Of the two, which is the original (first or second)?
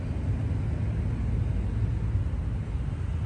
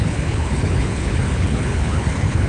first